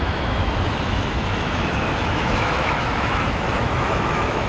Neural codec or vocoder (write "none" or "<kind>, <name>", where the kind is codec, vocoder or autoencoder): autoencoder, DAC-VAE